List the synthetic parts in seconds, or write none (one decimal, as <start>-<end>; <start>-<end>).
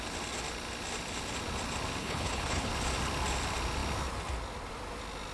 2.0-2.7